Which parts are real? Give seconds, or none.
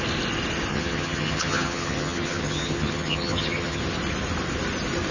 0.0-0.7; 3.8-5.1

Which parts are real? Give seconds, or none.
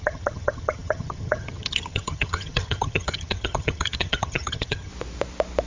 4.9-5.7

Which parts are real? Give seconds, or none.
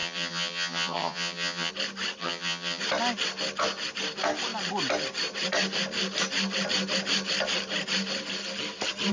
1.7-2.2; 2.8-9.1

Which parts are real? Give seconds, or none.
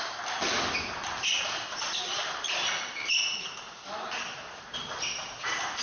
0.0-5.8